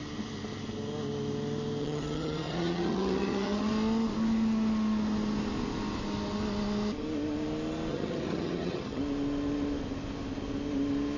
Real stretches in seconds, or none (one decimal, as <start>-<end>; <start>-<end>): 0.0-1.8; 3.7-7.9; 9.0-11.2